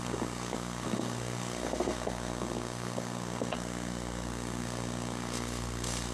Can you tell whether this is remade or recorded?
remade